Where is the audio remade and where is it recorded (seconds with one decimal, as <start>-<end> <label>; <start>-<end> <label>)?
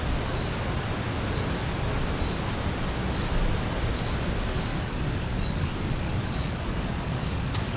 0.0-4.7 recorded; 4.7-7.8 remade